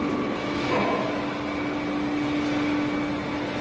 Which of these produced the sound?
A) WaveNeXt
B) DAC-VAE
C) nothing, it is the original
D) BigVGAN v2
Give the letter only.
C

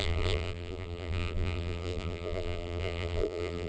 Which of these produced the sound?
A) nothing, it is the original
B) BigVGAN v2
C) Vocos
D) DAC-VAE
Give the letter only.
B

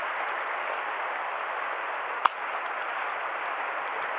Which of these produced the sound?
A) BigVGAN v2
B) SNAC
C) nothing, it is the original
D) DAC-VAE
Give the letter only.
C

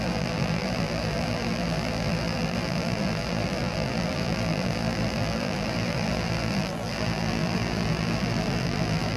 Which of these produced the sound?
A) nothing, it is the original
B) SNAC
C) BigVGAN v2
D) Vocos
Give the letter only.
C